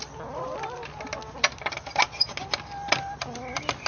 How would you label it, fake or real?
real